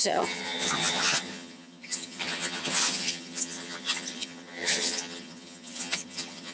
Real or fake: fake